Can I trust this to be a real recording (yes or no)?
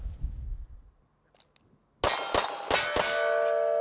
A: yes